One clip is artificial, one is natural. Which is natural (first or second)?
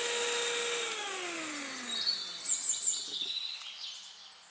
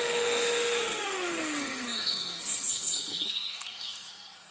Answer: first